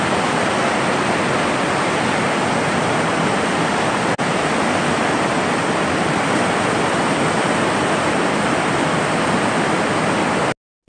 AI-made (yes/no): no